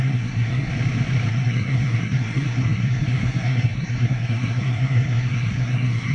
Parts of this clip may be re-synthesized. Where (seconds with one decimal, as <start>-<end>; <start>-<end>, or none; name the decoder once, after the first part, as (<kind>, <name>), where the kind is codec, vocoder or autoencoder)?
0.0-0.7 (codec, SNAC); 1.3-6.1

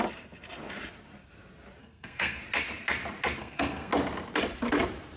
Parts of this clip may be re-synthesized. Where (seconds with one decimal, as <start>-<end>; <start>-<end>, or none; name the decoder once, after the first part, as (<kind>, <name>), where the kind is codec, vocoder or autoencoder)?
1.8-2.4 (codec, SNAC); 3.4-3.9

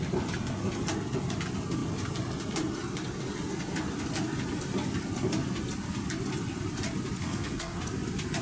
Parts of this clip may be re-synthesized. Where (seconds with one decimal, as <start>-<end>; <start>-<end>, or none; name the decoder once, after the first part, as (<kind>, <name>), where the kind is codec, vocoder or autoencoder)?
7.2-7.8 (codec, SNAC)

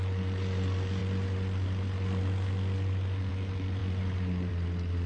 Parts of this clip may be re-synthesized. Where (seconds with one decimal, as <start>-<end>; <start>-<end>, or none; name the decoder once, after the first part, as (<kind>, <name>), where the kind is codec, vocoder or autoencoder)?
none

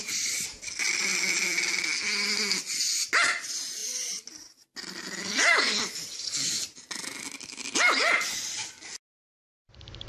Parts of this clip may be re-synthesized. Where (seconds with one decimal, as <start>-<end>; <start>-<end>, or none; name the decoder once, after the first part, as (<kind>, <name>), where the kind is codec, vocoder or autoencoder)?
none

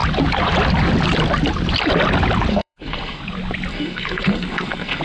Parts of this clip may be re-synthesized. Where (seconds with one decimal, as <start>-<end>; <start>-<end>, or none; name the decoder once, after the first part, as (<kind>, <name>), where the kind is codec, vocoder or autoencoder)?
2.5-3.2 (codec, SNAC); 3.7-5.0

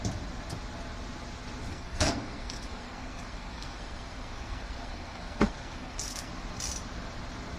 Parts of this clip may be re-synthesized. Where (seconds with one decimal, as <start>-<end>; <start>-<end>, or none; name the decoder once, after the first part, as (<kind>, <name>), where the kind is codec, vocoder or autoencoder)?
1.7-6.3 (codec, SNAC)